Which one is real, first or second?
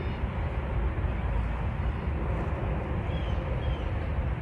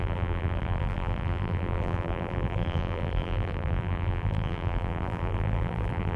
first